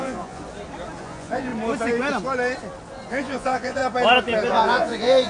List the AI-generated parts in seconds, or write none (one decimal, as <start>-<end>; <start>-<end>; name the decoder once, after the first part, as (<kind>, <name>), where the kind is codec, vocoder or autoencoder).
0.0-0.4 (vocoder, Vocos); 1.0-1.5; 3.1-3.8; 4.5-5.3